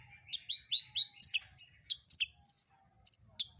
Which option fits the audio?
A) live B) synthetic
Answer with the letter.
A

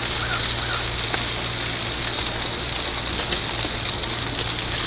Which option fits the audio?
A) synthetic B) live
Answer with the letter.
B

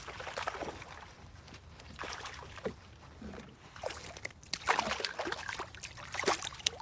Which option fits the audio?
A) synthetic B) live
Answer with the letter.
A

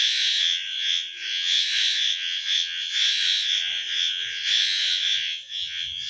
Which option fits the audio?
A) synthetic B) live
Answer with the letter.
A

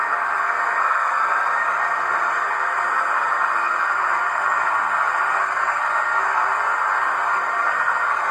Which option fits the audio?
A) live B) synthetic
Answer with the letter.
B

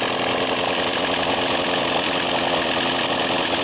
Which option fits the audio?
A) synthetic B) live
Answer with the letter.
B